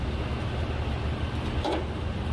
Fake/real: real